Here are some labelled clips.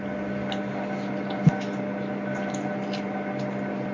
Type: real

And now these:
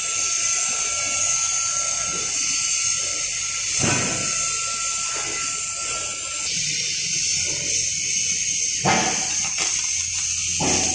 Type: real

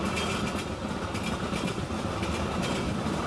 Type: real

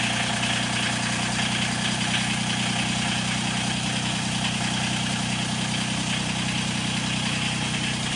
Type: real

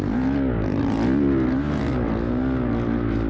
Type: real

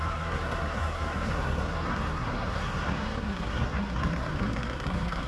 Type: fake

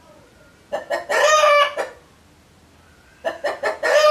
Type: real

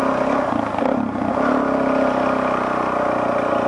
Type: real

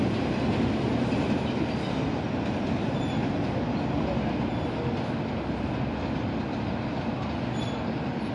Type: real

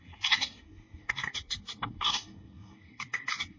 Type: fake